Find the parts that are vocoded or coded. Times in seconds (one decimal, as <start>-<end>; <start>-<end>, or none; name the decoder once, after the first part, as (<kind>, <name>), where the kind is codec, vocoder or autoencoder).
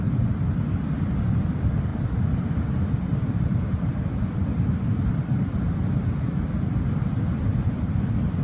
1.9-6.9 (vocoder, BigVGAN v2)